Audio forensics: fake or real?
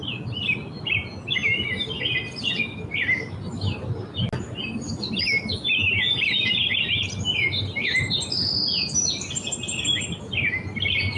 real